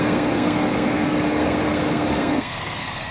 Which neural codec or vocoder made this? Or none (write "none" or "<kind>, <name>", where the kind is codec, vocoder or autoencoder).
codec, SNAC